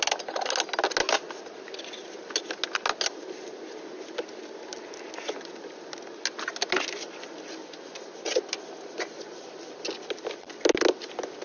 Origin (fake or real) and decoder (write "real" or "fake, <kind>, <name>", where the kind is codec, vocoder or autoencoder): real